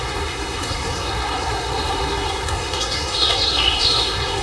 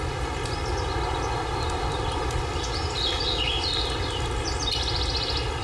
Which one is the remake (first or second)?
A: first